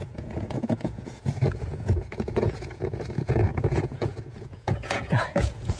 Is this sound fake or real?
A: fake